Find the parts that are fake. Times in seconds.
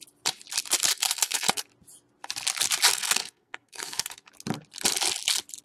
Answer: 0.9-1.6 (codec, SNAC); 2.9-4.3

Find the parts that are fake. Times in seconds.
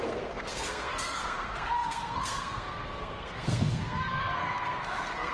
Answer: 0.0-5.3 (codec, SNAC)